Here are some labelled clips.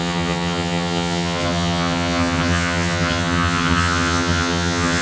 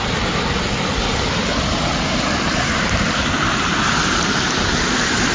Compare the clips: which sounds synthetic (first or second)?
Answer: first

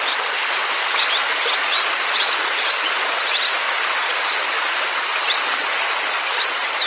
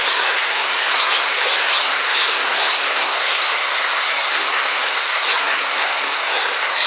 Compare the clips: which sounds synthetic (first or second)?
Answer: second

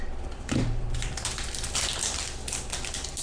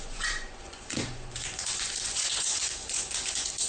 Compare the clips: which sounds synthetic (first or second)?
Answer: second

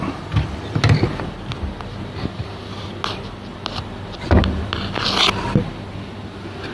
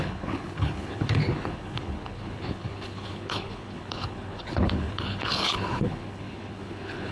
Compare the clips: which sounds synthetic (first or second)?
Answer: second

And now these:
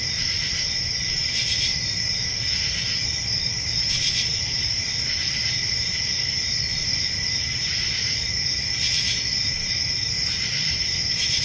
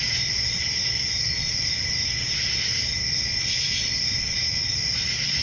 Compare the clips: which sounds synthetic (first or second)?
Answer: first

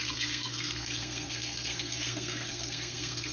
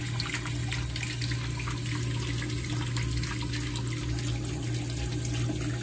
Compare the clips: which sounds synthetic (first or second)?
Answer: first